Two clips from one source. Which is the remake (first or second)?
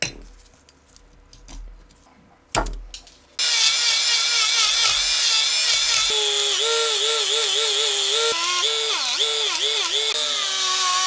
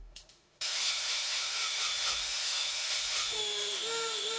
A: second